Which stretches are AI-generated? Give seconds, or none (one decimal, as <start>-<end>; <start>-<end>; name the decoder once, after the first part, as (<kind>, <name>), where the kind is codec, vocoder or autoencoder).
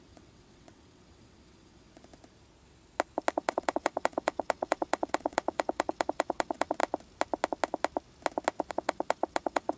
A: 0.0-2.1 (vocoder, WaveNeXt); 3.3-6.8; 8.7-9.8